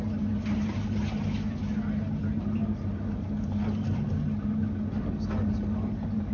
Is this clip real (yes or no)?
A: yes